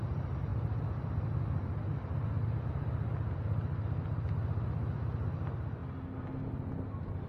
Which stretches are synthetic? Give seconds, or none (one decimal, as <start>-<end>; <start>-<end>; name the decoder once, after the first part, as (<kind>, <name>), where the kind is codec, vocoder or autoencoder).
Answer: none